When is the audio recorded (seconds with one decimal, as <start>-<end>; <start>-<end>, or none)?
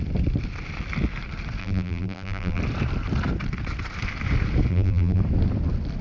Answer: 0.0-1.6; 2.6-4.7; 5.2-6.0